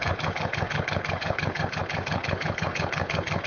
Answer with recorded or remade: remade